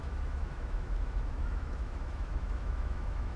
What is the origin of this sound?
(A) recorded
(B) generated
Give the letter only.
B